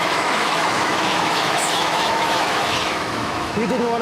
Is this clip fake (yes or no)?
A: yes